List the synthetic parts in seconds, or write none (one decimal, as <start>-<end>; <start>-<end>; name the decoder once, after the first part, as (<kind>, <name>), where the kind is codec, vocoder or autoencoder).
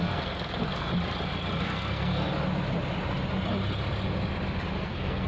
0.0-0.9 (codec, SNAC); 1.6-2.3; 4.8-5.3